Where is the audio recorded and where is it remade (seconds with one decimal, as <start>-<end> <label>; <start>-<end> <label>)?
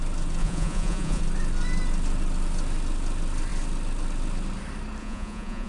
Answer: 0.0-0.4 recorded; 0.4-1.2 remade; 1.2-5.0 recorded; 5.0-5.7 remade